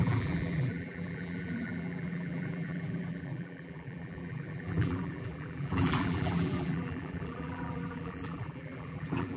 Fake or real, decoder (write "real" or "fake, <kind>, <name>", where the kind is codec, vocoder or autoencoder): fake, vocoder, BigVGAN v2